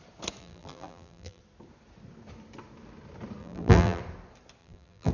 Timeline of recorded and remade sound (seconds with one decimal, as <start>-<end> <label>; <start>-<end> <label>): 0.0-0.4 recorded; 0.4-1.4 remade; 1.4-3.4 recorded; 3.4-4.0 remade; 4.0-4.6 recorded; 4.6-5.1 remade